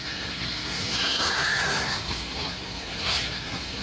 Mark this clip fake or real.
fake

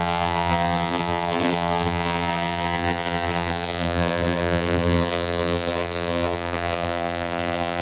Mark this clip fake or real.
fake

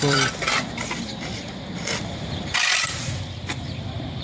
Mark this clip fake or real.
fake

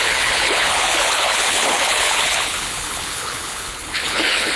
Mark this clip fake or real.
fake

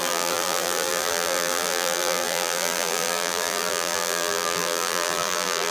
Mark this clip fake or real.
fake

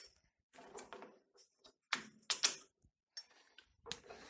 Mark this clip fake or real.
real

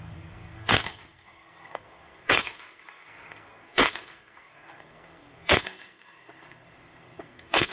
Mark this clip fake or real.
fake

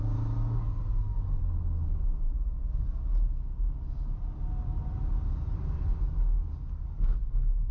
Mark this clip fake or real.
real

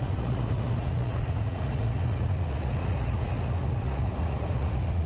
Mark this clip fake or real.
fake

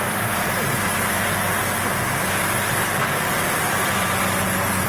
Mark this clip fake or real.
real